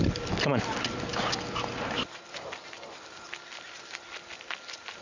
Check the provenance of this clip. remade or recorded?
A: recorded